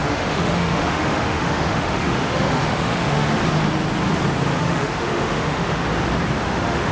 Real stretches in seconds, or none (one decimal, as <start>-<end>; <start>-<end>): 3.4-4.6; 5.8-6.4